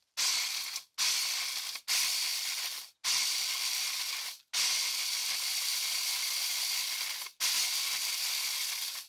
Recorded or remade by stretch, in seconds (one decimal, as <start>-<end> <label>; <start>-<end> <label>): 0.0-9.1 recorded